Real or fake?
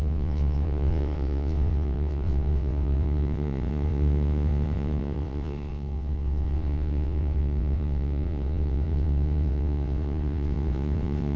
fake